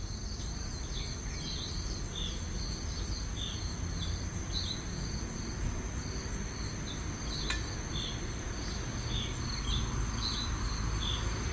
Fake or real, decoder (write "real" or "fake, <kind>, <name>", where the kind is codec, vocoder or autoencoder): real